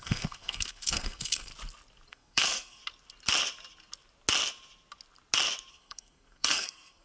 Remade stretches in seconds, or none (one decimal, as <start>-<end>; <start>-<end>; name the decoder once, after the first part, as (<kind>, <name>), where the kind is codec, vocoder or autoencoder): 0.0-1.5 (codec, SNAC); 2.1-2.8; 5.7-7.0